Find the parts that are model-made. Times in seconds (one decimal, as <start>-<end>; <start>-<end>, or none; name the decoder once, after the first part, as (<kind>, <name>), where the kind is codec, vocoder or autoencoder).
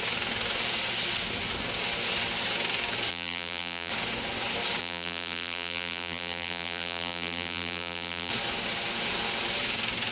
3.1-3.9 (vocoder, BigVGAN v2); 4.8-8.3